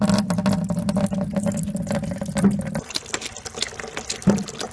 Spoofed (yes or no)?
no